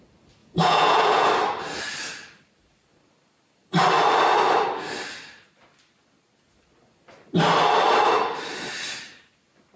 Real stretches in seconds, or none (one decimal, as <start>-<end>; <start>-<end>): 0.0-0.4; 1.3-9.8